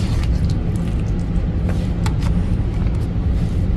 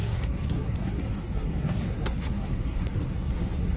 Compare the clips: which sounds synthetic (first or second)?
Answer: second